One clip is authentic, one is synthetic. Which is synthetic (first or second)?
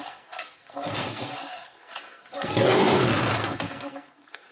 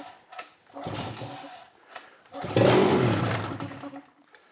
first